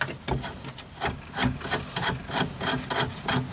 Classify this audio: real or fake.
real